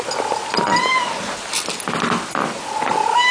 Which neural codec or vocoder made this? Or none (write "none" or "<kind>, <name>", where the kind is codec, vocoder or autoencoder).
none